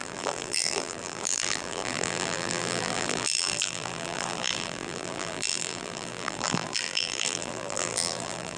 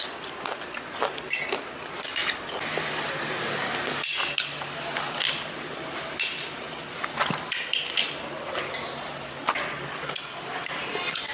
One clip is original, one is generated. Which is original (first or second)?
second